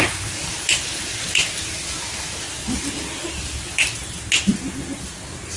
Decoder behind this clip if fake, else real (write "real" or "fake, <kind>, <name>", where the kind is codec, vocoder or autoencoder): real